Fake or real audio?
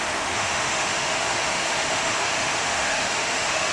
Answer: fake